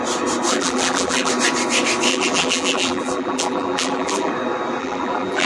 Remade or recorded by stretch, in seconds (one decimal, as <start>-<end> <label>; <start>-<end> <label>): 0.0-0.5 recorded; 0.5-1.3 remade; 1.3-2.1 recorded; 2.1-4.3 remade; 4.3-4.8 recorded; 4.8-5.5 remade

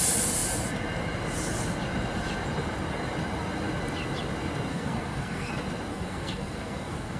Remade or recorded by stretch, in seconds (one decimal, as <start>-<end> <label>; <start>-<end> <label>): 0.0-4.7 recorded; 4.7-5.5 remade; 5.5-5.9 recorded; 5.9-7.2 remade

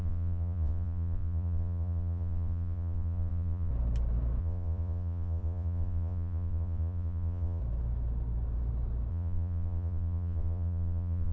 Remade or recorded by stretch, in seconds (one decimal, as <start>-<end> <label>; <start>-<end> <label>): 0.0-3.7 remade; 3.7-4.4 recorded; 4.4-7.6 remade; 7.6-9.1 recorded; 9.1-11.3 remade

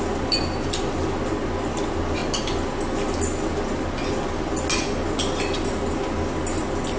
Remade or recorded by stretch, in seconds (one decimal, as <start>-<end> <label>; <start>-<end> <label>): 0.0-7.0 recorded

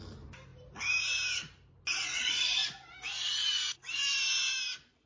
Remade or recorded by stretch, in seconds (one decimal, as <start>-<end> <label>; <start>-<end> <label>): 0.0-5.1 recorded